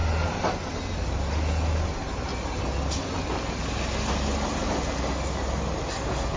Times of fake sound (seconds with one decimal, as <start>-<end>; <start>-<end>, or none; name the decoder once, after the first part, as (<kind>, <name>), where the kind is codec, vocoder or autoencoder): none

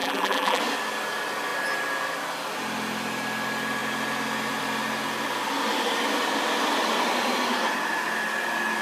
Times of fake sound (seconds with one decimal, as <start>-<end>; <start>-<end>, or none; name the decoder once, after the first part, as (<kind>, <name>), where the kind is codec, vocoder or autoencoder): 0.0-0.6 (vocoder, BigVGAN v2)

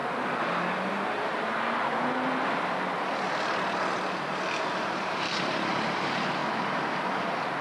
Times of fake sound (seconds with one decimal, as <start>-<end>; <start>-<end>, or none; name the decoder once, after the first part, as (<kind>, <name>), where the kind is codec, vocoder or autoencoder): 0.9-1.3 (vocoder, BigVGAN v2); 4.7-6.4

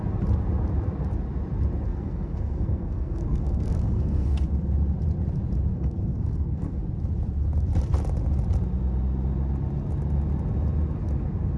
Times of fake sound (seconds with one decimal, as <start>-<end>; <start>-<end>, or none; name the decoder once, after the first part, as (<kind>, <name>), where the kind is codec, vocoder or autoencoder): 1.9-4.4 (codec, SNAC); 5.7-6.8